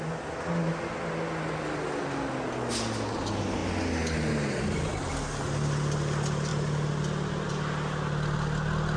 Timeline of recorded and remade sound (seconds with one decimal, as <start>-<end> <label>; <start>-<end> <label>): 0.0-9.0 recorded